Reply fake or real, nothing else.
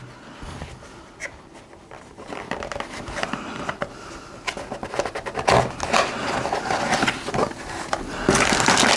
real